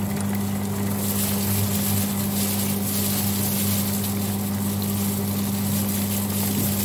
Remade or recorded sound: recorded